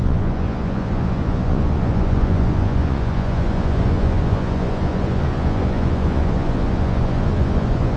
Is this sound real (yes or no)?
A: no